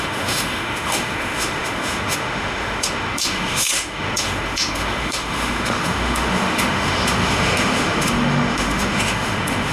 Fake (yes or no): yes